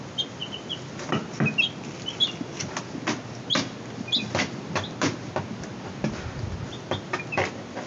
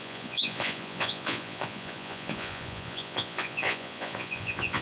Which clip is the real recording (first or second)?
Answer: first